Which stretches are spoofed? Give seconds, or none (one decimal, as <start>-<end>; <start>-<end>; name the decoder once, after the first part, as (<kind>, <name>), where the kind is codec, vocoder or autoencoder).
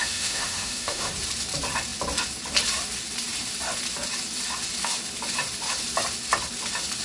0.0-1.1 (autoencoder, DAC-VAE)